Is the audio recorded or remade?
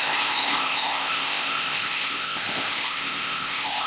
remade